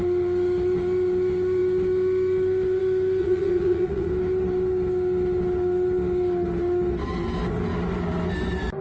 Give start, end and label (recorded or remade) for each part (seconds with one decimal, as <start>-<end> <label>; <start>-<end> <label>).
0.0-3.2 recorded; 3.2-4.1 remade; 4.1-8.8 recorded